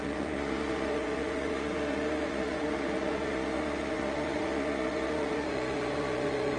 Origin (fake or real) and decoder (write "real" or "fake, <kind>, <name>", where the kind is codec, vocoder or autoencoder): fake, vocoder, Vocos